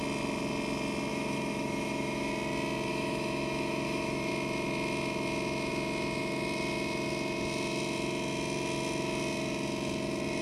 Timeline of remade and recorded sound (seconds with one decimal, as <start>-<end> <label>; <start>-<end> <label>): 0.0-1.1 recorded; 1.1-2.3 remade; 2.3-2.9 recorded; 2.9-4.3 remade; 4.3-10.4 recorded

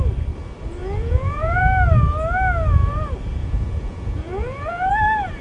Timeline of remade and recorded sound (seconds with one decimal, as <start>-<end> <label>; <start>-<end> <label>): 0.0-0.8 recorded; 0.8-1.6 remade; 1.6-3.4 recorded; 3.4-4.9 remade; 4.9-5.4 recorded

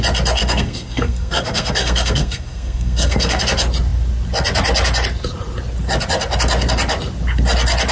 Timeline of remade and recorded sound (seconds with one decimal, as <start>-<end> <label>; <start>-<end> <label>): 0.0-0.4 recorded; 0.4-3.4 remade; 3.4-7.9 recorded

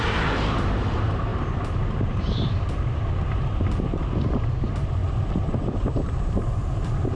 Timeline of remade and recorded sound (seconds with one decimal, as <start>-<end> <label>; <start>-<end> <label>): 0.0-5.0 remade; 5.0-5.5 recorded; 5.5-7.1 remade

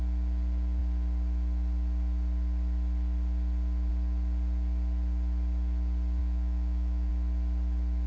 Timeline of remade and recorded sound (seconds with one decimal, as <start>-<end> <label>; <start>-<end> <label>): 0.0-6.2 recorded; 6.2-7.1 remade; 7.1-8.1 recorded

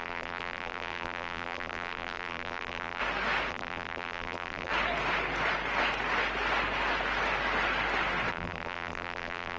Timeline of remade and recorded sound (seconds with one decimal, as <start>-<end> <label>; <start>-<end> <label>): 0.0-3.0 remade; 3.0-3.5 recorded; 3.5-4.7 remade; 4.7-8.3 recorded; 8.3-9.6 remade